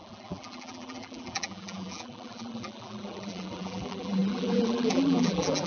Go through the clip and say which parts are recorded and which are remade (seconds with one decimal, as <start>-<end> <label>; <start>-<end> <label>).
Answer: 0.0-5.7 remade